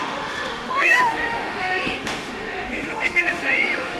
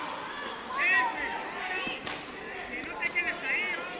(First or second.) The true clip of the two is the second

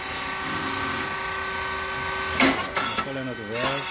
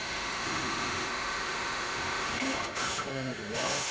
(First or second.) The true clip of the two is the first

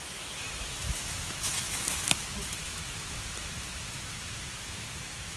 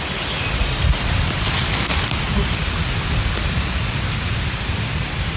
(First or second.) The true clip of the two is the second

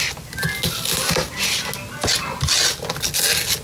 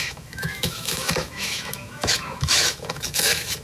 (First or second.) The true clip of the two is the first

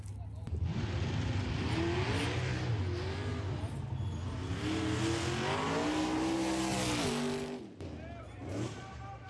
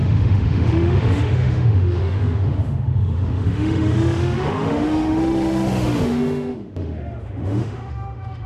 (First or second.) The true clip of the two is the first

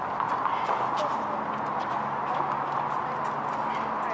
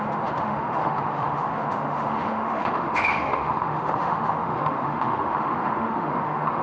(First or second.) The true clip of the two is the first